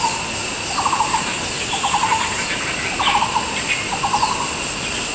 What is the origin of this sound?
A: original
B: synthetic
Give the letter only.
A